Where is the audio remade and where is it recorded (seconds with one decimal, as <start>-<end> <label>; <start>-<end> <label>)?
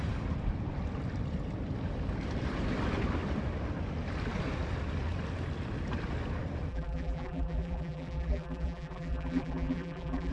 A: 0.0-6.7 recorded; 6.7-10.3 remade